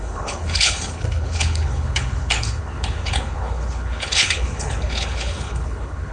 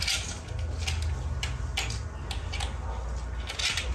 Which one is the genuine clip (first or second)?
second